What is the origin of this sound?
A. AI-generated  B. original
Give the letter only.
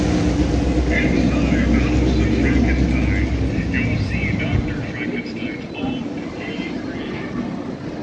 B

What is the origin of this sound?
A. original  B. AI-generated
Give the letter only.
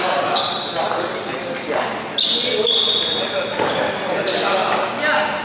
A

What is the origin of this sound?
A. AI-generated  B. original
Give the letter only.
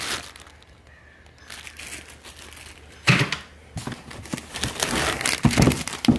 B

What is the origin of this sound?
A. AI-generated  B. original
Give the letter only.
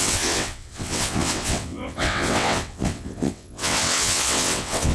A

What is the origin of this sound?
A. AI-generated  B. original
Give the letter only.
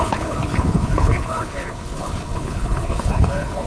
A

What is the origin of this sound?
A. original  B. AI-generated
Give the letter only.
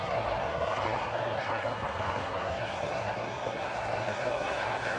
B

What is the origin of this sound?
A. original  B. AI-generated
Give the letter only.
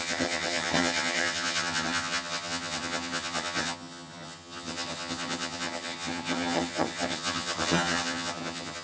B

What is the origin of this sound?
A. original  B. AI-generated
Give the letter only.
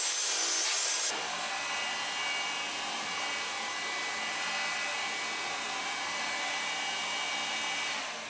A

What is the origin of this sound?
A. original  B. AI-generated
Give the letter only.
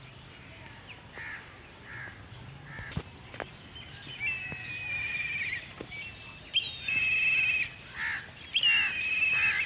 A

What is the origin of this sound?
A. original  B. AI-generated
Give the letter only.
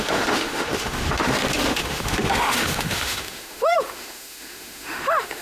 B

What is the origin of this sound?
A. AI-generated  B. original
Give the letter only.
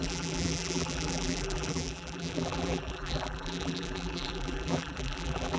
A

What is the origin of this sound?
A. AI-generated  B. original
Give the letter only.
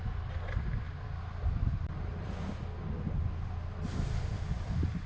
B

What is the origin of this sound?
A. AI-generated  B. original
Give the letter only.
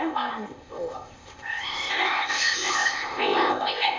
A